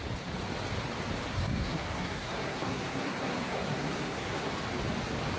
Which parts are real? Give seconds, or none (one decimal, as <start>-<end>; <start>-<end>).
0.0-1.3; 4.5-5.4